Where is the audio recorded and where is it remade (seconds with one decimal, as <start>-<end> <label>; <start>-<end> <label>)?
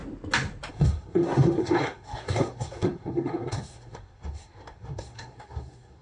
0.0-0.7 recorded; 0.7-6.0 remade